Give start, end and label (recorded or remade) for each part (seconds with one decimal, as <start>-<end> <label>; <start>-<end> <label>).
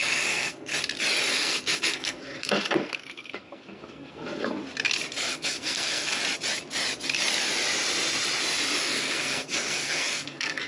0.0-0.7 remade; 0.7-1.3 recorded; 1.3-4.6 remade; 4.6-5.3 recorded; 5.3-6.2 remade; 6.2-8.8 recorded; 8.8-10.7 remade